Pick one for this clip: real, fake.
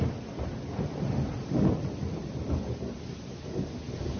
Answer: real